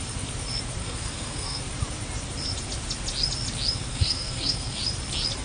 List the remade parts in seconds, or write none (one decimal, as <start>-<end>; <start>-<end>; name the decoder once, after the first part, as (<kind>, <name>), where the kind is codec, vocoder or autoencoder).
0.8-1.6 (codec, SNAC); 3.9-4.8